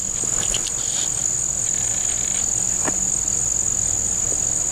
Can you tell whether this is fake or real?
real